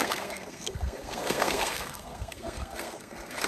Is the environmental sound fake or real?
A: fake